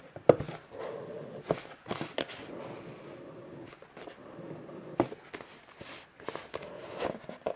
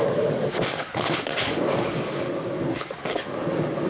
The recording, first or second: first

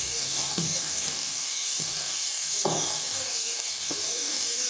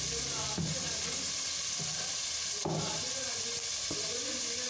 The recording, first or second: second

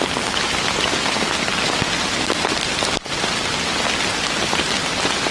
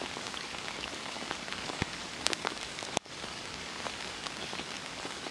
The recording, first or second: first